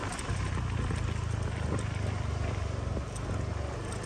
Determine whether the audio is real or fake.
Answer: real